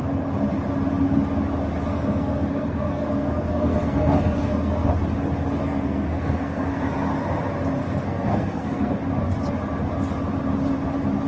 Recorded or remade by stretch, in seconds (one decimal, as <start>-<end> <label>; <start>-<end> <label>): 0.0-1.9 recorded; 1.9-4.9 remade; 4.9-5.6 recorded; 5.6-6.8 remade; 6.8-7.8 recorded; 7.8-9.0 remade; 9.0-11.3 recorded